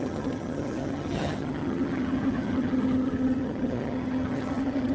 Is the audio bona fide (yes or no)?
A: no